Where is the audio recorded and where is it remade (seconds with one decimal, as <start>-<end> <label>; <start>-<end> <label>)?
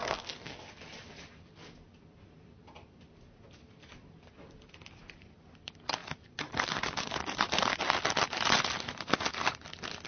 0.0-0.6 remade; 0.6-10.1 recorded